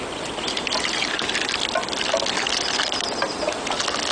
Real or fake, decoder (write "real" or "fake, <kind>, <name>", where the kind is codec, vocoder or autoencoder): real